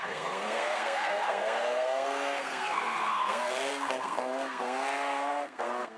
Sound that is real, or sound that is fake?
fake